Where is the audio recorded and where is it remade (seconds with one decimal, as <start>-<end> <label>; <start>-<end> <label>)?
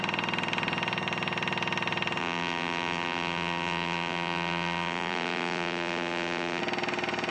0.0-2.2 recorded; 2.2-6.6 remade; 6.6-7.3 recorded